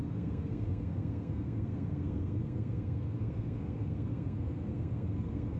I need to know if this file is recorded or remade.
remade